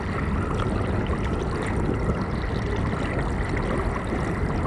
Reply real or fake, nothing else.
real